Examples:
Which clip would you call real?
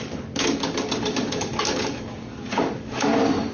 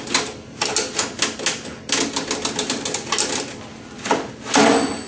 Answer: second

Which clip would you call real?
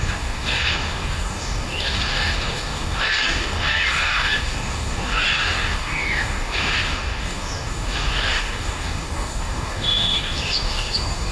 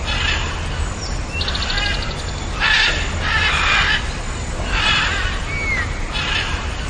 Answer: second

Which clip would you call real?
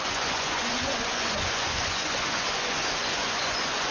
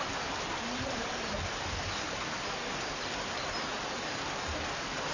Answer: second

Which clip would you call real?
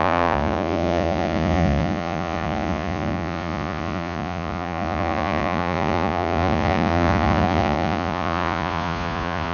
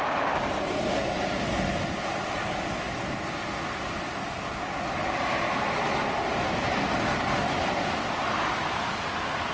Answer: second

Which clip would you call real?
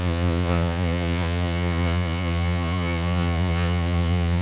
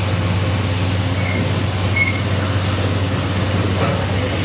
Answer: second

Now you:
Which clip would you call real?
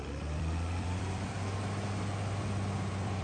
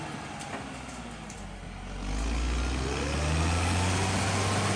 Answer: second